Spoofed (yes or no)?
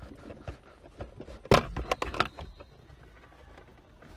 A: no